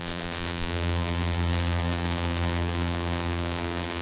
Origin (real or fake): fake